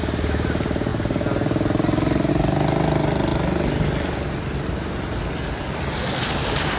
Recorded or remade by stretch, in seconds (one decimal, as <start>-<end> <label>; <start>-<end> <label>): 0.0-6.8 recorded